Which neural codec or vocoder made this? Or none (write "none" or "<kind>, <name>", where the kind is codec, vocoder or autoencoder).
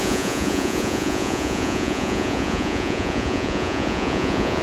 vocoder, Vocos